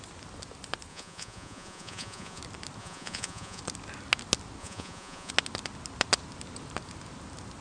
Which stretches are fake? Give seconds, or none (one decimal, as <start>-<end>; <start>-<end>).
0.9-2.4; 2.8-3.6; 4.6-5.3